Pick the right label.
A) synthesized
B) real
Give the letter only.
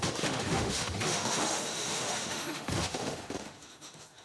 A